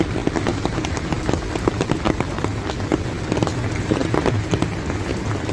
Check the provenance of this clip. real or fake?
real